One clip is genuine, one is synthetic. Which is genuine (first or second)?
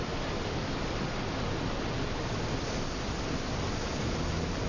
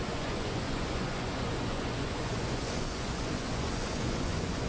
first